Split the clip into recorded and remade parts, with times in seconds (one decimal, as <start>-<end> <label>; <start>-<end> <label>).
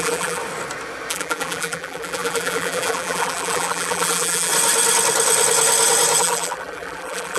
0.0-0.4 remade; 0.4-1.1 recorded; 1.1-4.5 remade; 4.5-6.2 recorded; 6.2-7.4 remade